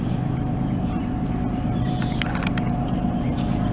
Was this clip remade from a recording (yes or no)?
no